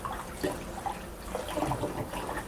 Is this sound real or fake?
real